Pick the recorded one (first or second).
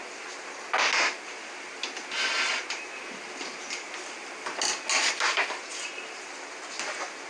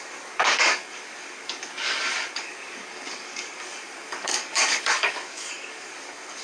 first